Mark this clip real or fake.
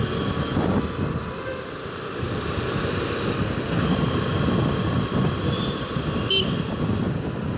real